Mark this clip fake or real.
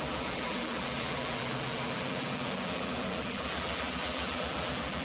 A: fake